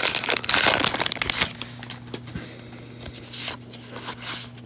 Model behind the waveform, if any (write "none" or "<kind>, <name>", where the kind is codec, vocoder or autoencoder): none